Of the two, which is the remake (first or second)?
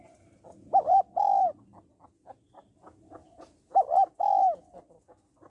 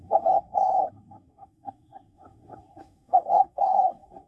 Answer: second